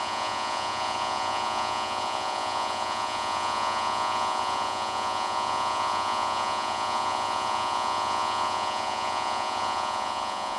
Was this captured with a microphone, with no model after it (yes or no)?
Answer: no